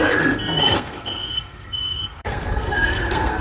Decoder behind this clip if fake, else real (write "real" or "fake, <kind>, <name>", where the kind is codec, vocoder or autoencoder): fake, codec, SNAC